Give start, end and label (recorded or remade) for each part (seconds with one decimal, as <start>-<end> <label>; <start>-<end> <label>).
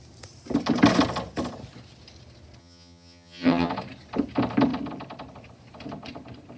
0.0-2.6 recorded; 2.6-3.7 remade; 3.7-6.6 recorded